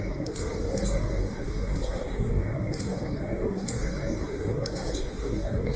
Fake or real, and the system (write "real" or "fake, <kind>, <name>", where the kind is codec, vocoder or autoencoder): fake, codec, SNAC